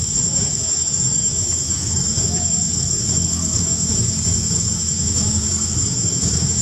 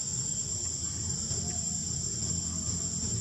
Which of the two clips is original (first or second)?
second